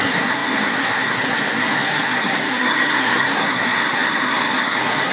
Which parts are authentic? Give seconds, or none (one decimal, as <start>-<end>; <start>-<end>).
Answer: none